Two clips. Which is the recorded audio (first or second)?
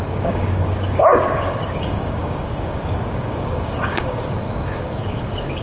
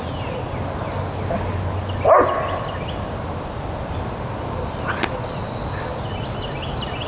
second